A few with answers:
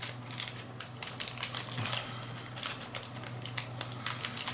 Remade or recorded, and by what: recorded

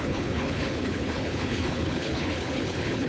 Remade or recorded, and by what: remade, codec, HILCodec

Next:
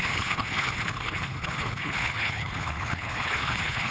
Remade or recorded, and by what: remade, codec, HILCodec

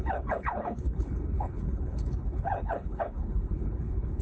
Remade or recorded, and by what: remade, codec, HILCodec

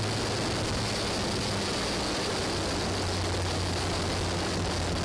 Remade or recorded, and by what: recorded